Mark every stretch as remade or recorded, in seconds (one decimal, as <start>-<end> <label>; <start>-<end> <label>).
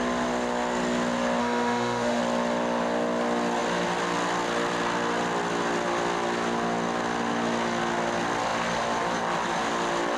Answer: 0.0-1.4 recorded; 1.4-2.2 remade; 2.2-10.2 recorded